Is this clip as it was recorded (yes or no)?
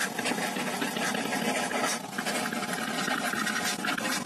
no